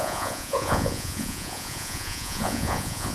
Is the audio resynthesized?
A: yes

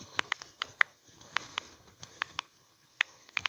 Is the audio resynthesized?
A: yes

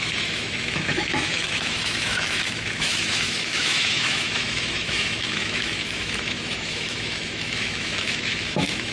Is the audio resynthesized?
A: yes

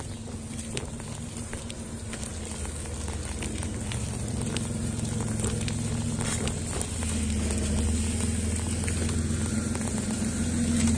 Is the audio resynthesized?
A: no